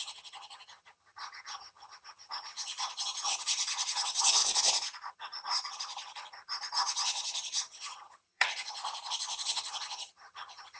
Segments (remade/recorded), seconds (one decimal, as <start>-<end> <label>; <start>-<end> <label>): 0.0-4.4 remade; 4.4-5.1 recorded; 5.1-8.8 remade; 8.8-9.4 recorded; 9.4-10.8 remade